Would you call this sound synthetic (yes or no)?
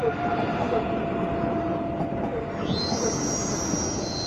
no